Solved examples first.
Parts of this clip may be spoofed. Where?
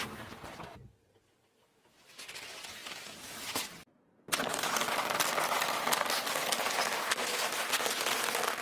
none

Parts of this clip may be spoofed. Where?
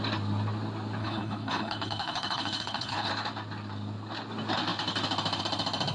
1.0-3.1 (codec, HILCodec)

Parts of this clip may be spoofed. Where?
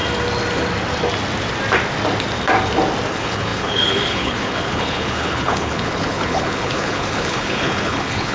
3.1-8.3 (codec, HILCodec)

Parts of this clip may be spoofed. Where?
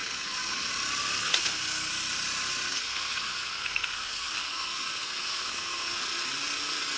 0.0-0.7 (codec, SNAC); 1.2-1.9; 2.7-6.0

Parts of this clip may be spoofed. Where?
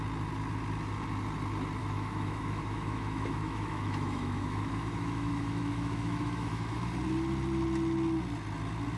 1.8-6.9 (autoencoder, DAC-VAE)